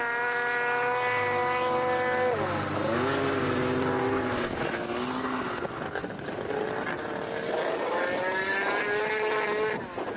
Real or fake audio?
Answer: real